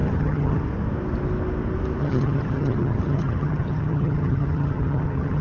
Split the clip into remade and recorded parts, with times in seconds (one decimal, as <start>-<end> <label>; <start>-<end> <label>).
0.0-0.6 remade; 0.6-2.0 recorded; 2.0-5.4 remade